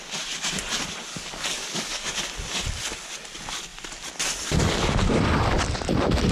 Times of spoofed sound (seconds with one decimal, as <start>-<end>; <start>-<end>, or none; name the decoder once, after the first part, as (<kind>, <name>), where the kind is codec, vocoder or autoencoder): 1.1-2.2 (codec, DAC)